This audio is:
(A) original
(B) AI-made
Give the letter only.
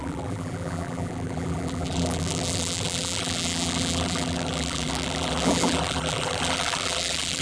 B